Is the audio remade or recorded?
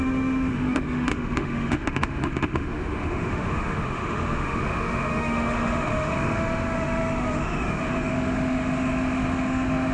remade